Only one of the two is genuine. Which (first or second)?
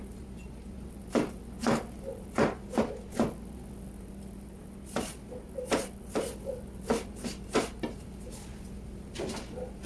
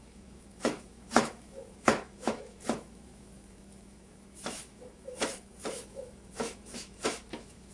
first